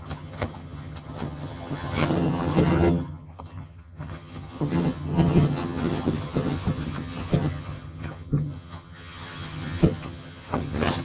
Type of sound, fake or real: fake